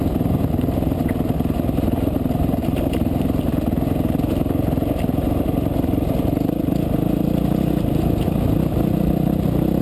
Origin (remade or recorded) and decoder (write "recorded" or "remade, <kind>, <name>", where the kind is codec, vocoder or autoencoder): recorded